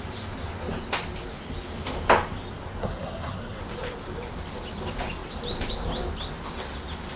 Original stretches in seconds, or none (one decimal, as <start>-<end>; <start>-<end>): 0.0-2.8; 3.6-7.2